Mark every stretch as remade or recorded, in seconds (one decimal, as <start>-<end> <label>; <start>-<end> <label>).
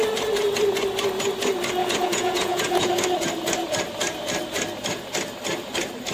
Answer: 0.0-1.8 recorded; 1.8-2.9 remade; 2.9-6.1 recorded